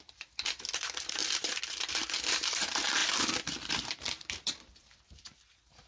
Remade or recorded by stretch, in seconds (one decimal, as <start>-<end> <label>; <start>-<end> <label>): 0.0-3.0 remade; 3.0-3.7 recorded; 3.7-5.9 remade

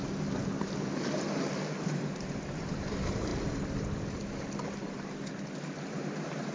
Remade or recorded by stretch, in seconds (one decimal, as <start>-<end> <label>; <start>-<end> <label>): 0.0-1.8 recorded; 1.8-3.3 remade; 3.3-5.6 recorded; 5.6-6.5 remade